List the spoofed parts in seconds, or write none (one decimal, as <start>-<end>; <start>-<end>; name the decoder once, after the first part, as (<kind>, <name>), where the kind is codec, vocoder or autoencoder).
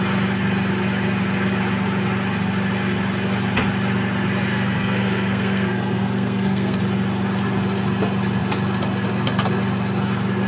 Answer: 4.5-6.8 (codec, SNAC)